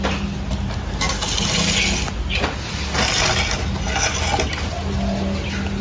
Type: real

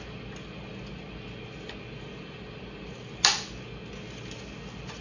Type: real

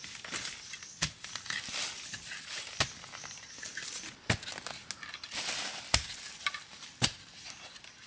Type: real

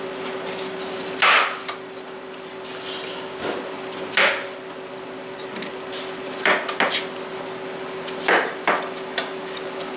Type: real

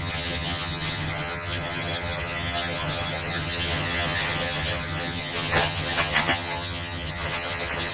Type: fake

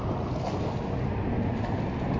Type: real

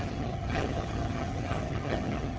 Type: fake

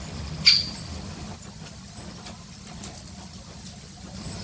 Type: real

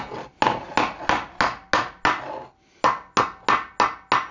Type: real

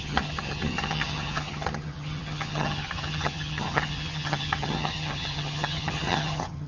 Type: fake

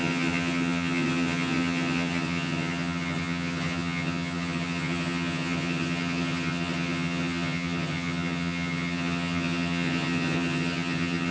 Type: fake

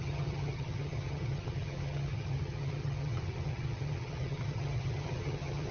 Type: fake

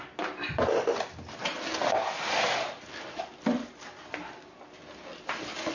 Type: real